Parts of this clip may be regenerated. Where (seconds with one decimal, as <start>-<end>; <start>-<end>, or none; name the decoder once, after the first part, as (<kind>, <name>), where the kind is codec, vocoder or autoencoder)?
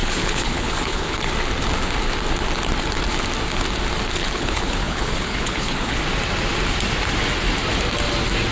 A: 0.0-1.3 (codec, HILCodec); 4.2-6.0